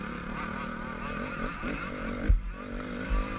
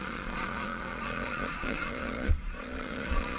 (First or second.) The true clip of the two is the first